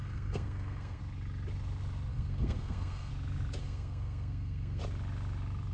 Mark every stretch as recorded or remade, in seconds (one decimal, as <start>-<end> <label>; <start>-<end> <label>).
0.0-1.0 remade; 1.0-2.1 recorded; 2.1-3.1 remade; 3.1-3.6 recorded; 3.6-4.8 remade; 4.8-5.7 recorded